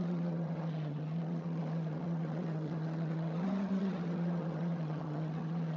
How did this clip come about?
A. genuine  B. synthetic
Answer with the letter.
B